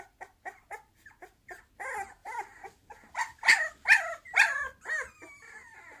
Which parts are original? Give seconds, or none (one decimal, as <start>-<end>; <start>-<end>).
0.0-6.0